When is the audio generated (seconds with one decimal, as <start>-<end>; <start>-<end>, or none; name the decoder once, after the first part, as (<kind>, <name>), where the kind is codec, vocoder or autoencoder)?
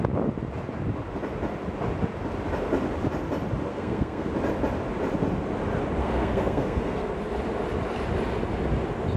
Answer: 3.7-4.3 (codec, SNAC); 6.0-7.1